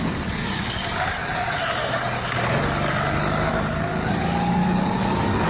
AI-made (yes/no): yes